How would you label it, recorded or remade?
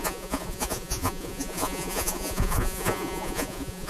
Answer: remade